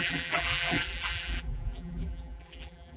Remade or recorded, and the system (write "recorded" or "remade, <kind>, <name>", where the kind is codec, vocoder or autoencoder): remade, vocoder, BigVGAN v2